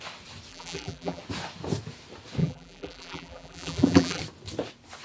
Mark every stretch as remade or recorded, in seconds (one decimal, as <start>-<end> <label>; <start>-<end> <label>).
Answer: 0.0-0.5 recorded; 0.5-1.2 remade; 1.2-2.4 recorded; 2.4-4.2 remade; 4.2-5.0 recorded